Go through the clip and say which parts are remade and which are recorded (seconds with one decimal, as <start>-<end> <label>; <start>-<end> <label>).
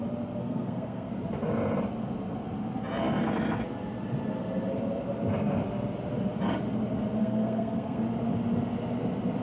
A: 0.0-0.4 recorded; 0.4-1.1 remade; 1.1-7.2 recorded; 7.2-8.0 remade; 8.0-9.4 recorded